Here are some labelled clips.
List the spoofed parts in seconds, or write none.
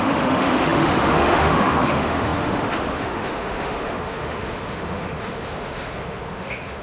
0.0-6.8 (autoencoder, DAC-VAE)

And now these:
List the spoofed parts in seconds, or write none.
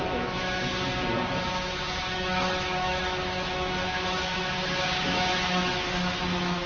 0.0-0.7 (autoencoder, DAC-VAE); 1.4-6.7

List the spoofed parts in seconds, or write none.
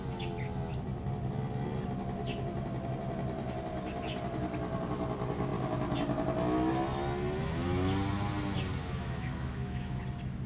8.8-10.0 (autoencoder, DAC-VAE)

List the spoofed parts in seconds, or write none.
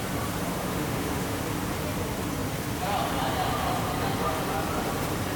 0.5-1.4 (autoencoder, DAC-VAE)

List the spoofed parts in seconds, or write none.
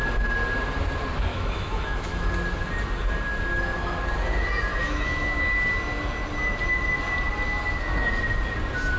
1.3-2.3 (autoencoder, DAC-VAE); 4.7-5.4